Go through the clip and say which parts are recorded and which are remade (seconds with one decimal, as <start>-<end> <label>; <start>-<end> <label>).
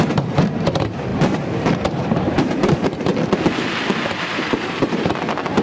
0.0-3.1 remade; 3.1-4.3 recorded; 4.3-5.6 remade